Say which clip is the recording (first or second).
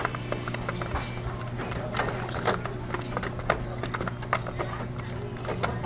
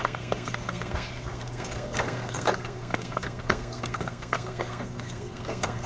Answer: first